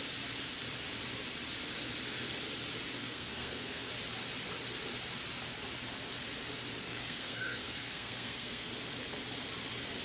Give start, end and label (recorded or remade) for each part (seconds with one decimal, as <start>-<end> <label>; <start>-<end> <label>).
0.0-3.0 recorded; 3.0-3.9 remade; 3.9-6.8 recorded; 6.8-8.7 remade; 8.7-10.0 recorded